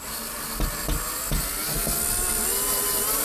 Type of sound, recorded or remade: recorded